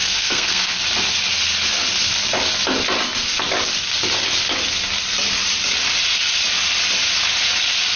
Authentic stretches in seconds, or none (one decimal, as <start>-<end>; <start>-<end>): 0.8-8.0